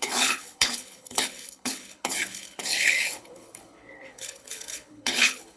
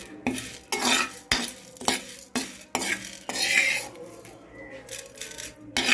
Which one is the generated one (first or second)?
first